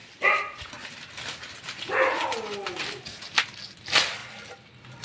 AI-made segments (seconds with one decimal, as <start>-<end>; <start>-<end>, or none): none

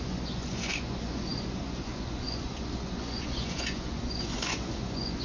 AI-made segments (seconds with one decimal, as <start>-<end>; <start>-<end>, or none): 0.0-5.2

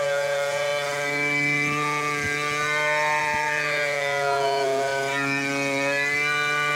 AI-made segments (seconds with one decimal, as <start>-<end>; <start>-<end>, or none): 0.0-0.7; 3.2-4.9

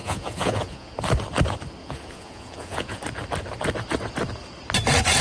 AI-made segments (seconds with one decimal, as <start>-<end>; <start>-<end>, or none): 0.0-0.9; 1.8-3.0

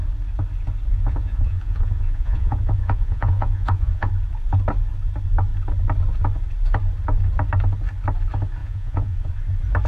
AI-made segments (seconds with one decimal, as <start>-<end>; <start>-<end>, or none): 0.9-4.1; 8.6-9.3

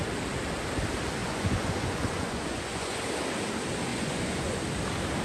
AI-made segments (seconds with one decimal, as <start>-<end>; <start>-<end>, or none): 1.2-3.0; 3.9-4.6

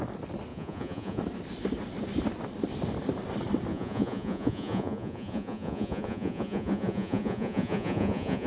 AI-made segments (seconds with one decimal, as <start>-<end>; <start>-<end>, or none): 0.5-1.2; 3.7-8.5

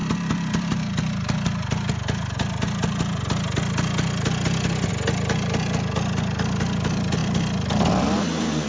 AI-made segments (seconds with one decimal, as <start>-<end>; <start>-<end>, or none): none